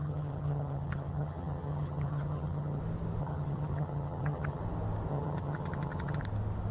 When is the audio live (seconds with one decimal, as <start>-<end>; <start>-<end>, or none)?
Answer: 2.8-3.2; 4.6-5.1; 6.2-6.7